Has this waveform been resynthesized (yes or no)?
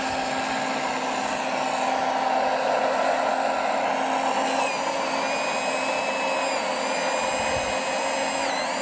no